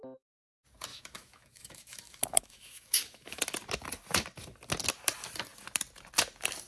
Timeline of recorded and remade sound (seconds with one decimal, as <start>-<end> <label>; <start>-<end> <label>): 0.0-0.9 recorded; 0.9-3.4 remade; 3.4-6.7 recorded

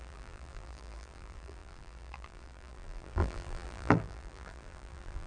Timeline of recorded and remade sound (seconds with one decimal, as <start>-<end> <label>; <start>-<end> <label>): 0.0-5.3 remade

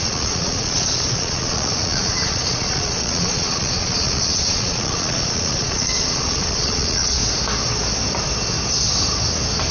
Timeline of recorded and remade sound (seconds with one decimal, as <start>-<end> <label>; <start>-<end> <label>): 0.0-7.2 remade; 7.2-9.7 recorded

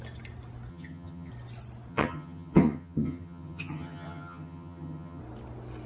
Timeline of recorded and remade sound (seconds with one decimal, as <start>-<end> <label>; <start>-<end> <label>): 0.0-0.7 recorded; 0.7-1.3 remade; 1.3-1.9 recorded; 1.9-5.2 remade; 5.2-5.9 recorded

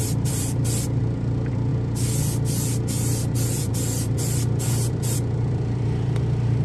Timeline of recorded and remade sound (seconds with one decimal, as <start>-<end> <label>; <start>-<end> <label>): 0.0-1.7 remade; 1.7-3.7 recorded; 3.7-6.6 remade

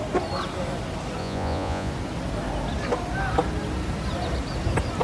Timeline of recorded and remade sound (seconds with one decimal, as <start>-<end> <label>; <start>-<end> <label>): 0.0-1.2 recorded; 1.2-1.9 remade; 1.9-5.0 recorded

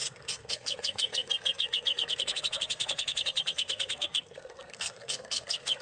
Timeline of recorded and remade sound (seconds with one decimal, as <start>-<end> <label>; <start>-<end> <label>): 0.0-5.8 remade